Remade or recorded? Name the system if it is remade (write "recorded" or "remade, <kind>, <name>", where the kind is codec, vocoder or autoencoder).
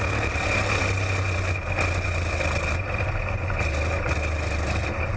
recorded